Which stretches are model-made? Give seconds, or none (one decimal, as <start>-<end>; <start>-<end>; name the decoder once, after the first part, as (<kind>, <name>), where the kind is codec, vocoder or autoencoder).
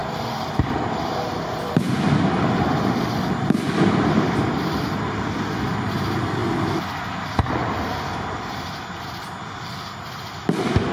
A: 0.0-5.0 (vocoder, BigVGAN v2)